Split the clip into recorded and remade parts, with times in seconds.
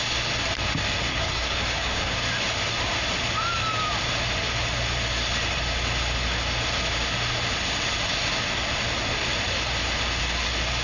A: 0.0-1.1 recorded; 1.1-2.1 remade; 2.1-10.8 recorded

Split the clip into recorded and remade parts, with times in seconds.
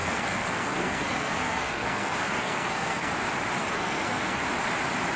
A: 0.0-3.1 remade; 3.1-3.6 recorded; 3.6-4.4 remade; 4.4-5.2 recorded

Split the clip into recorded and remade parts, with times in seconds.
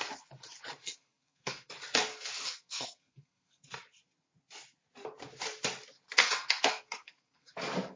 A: 0.0-0.8 recorded; 0.8-1.7 remade; 1.7-2.1 recorded; 2.1-3.6 remade; 3.6-6.2 recorded; 6.2-7.5 remade; 7.5-8.0 recorded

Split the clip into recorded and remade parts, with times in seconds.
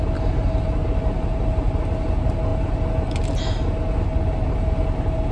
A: 0.0-5.3 recorded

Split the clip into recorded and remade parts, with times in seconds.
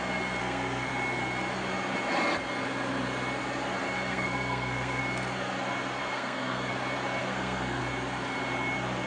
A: 0.0-0.4 recorded; 0.4-0.9 remade; 0.9-4.1 recorded; 4.1-5.0 remade; 5.0-6.0 recorded; 6.0-6.7 remade; 6.7-7.2 recorded; 7.2-7.8 remade; 7.8-9.1 recorded